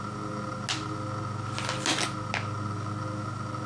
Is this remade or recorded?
recorded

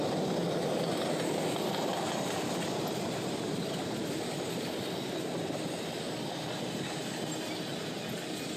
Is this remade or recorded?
recorded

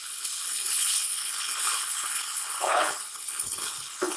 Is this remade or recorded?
remade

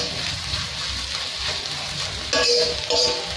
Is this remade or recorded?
recorded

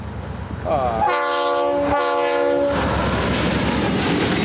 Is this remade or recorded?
recorded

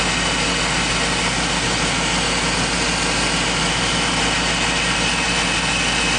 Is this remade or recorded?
recorded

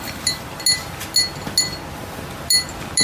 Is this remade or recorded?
recorded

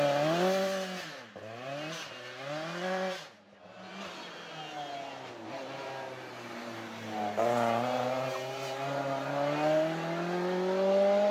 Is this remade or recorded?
recorded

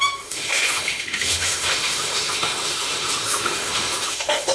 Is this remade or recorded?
remade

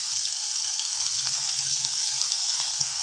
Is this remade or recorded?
remade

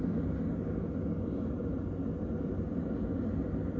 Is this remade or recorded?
recorded